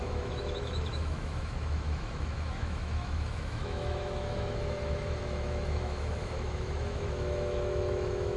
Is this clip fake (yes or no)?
yes